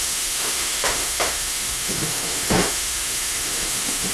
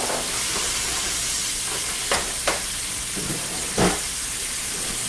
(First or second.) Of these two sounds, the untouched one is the second